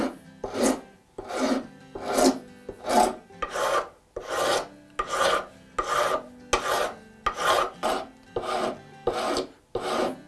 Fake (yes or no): no